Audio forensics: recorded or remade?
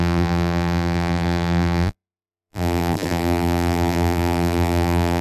remade